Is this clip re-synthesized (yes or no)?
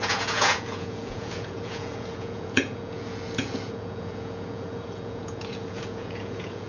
yes